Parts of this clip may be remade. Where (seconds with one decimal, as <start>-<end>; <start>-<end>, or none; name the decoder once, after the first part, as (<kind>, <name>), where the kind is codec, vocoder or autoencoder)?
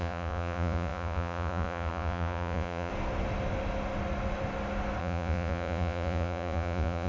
0.0-2.9 (vocoder, Vocos); 5.0-7.1